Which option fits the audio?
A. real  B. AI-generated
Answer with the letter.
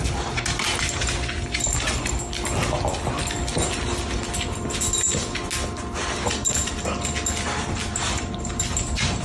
A